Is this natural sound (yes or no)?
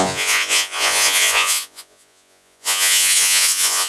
no